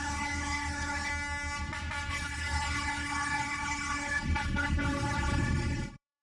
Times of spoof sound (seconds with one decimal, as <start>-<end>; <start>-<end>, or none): 0.0-1.1; 2.1-6.2